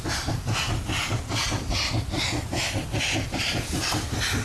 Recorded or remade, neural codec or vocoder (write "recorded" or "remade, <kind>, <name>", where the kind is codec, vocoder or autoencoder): recorded